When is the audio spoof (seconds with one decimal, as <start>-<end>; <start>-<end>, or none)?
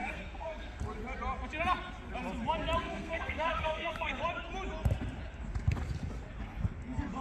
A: 0.0-0.8; 2.8-4.2